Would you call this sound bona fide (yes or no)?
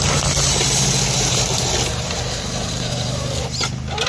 yes